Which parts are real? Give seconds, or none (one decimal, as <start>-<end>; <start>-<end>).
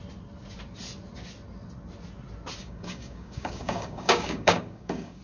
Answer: 0.0-2.6